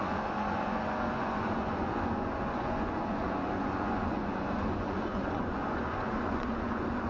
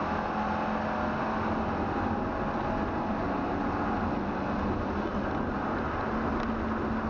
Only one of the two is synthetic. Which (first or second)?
first